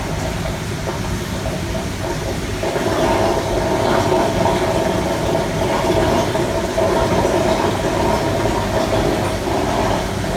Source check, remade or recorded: recorded